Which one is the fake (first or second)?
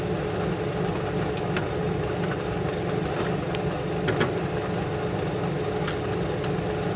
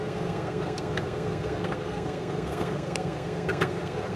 second